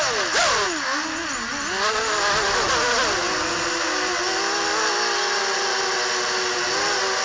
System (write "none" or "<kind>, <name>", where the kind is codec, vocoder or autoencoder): none